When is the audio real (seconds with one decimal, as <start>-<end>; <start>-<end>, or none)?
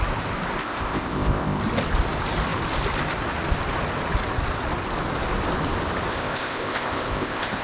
0.0-0.6; 1.6-6.1